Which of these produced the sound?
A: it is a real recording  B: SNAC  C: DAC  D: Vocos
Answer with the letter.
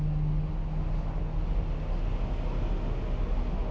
A